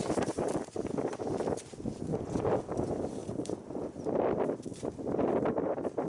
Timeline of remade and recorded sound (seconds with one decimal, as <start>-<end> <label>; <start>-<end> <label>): 0.0-3.2 recorded; 3.2-4.3 remade; 4.3-4.7 recorded; 4.7-6.1 remade